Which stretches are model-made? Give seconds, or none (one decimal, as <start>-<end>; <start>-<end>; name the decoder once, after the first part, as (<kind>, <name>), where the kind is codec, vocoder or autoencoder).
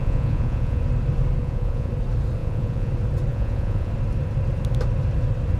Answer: 0.0-0.8 (vocoder, Vocos); 1.4-1.9; 2.4-2.9; 3.3-3.9